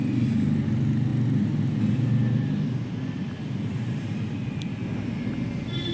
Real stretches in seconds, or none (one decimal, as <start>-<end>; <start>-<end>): 1.1-3.0